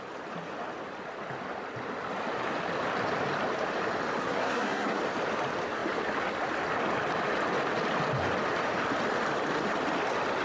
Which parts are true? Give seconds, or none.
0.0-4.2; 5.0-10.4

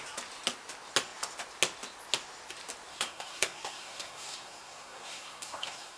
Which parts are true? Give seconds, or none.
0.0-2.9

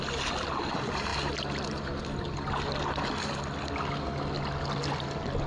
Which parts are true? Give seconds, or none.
0.0-5.5